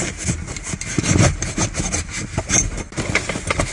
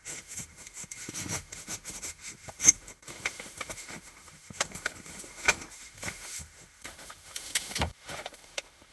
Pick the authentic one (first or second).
first